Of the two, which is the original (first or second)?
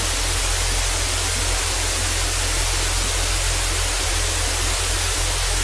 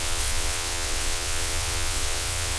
first